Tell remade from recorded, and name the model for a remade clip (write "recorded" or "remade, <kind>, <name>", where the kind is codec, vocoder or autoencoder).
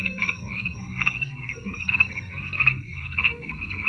remade, codec, SNAC